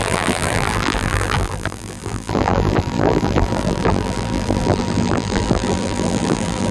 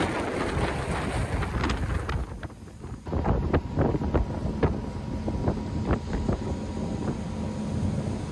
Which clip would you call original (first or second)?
second